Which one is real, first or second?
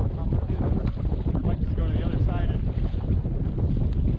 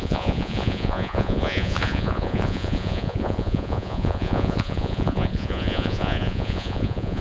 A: first